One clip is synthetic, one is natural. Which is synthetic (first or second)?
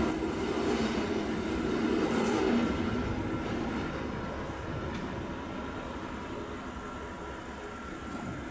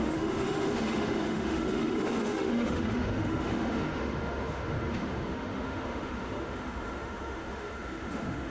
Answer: second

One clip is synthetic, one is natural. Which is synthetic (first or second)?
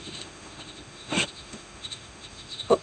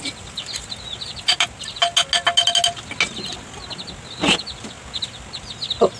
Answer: first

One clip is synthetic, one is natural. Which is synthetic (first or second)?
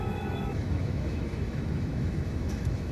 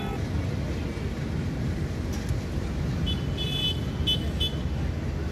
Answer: first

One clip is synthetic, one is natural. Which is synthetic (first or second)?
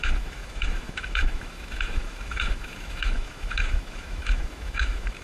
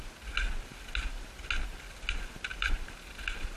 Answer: first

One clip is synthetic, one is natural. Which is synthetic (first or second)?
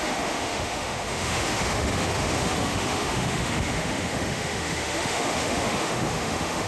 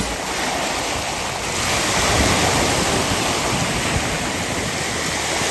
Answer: first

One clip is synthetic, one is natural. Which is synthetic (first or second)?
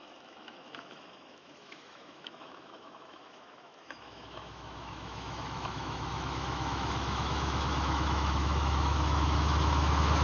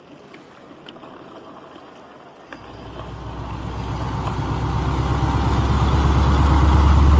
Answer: first